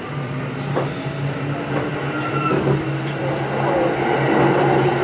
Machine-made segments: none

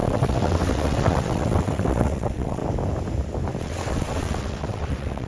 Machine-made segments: 0.0-2.6 (vocoder, WaveNeXt); 3.6-5.3

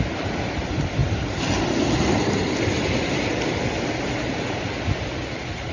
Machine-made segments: none

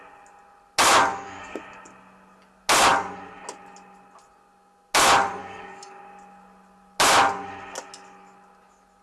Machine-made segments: 1.1-1.6 (codec, DAC); 5.4-6.0

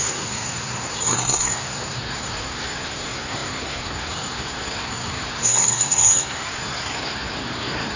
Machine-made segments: 0.0-8.0 (codec, SNAC)

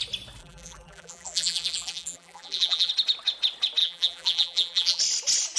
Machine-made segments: 0.4-2.9 (vocoder, BigVGAN v2); 3.8-5.0

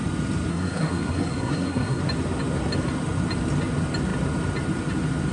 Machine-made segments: 0.5-2.0 (codec, SNAC)